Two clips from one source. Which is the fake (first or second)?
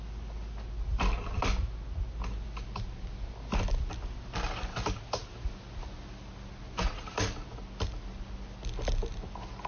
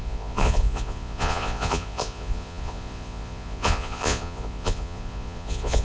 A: second